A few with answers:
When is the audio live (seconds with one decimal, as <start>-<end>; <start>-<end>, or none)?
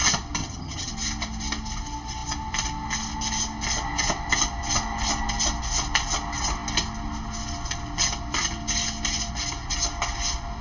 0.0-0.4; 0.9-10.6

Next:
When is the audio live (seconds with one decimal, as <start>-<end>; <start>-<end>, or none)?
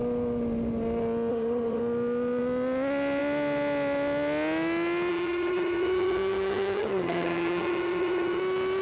0.0-1.3; 1.8-5.1; 8.4-8.8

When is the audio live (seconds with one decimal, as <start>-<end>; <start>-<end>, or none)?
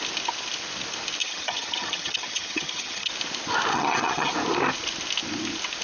0.0-1.2; 3.1-3.7; 4.3-5.8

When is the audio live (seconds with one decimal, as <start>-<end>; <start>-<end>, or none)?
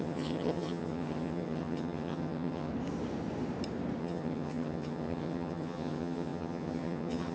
2.7-4.0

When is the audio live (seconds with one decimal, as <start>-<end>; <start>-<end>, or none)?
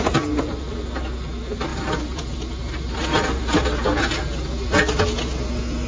0.0-5.9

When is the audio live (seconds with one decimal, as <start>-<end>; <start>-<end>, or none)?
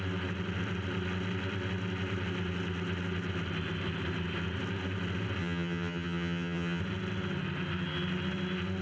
0.0-5.4; 6.8-8.8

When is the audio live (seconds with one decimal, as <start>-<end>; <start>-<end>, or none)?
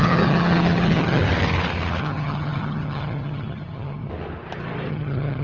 1.2-2.0; 4.1-4.9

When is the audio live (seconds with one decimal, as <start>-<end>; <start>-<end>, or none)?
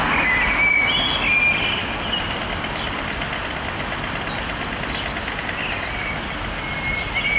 0.0-7.4